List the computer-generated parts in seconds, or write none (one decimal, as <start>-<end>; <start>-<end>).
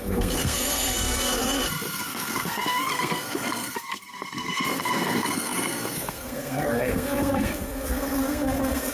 0.0-8.9